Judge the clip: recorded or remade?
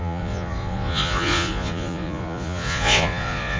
remade